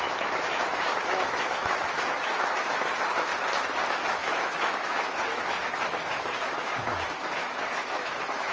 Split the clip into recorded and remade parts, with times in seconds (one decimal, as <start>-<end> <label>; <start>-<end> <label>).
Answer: 0.0-3.3 remade; 3.3-3.9 recorded; 3.9-8.5 remade